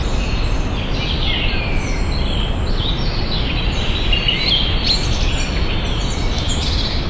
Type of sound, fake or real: real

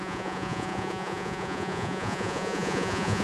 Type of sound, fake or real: fake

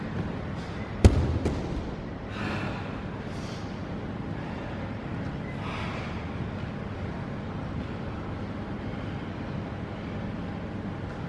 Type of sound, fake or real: real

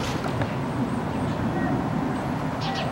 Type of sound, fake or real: real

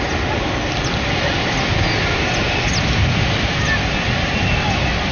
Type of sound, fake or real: real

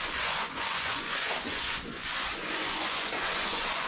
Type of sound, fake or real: fake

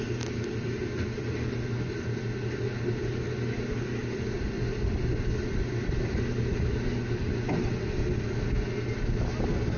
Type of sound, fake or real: real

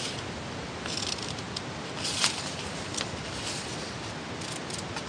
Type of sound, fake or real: real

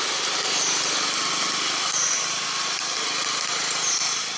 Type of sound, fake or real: real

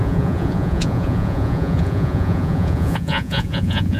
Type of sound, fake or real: fake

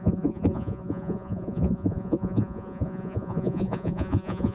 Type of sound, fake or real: fake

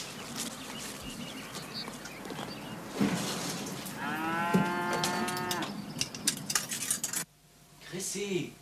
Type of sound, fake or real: real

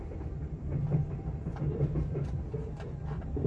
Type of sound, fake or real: real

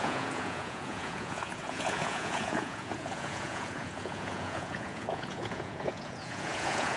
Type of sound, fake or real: fake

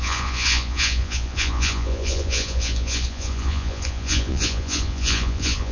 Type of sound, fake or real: fake